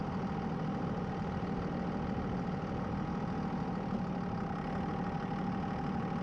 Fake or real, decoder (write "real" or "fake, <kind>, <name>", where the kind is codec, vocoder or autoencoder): real